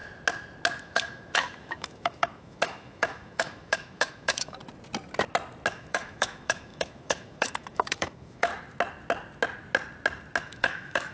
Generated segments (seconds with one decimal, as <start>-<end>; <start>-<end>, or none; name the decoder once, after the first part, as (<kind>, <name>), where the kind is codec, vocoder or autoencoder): 0.8-4.6 (autoencoder, DAC-VAE); 5.7-8.5; 10.4-11.1